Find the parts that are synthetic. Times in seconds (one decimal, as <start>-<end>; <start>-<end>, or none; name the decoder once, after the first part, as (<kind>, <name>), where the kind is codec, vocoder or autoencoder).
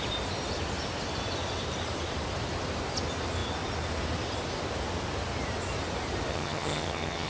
6.3-7.3 (vocoder, HiFi-GAN)